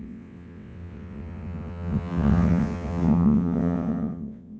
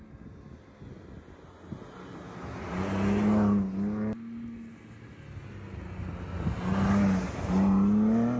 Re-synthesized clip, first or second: first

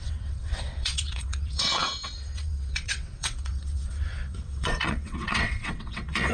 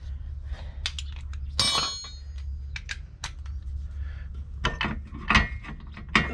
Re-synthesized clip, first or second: first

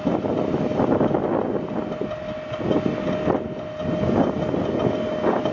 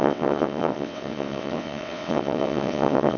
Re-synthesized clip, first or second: second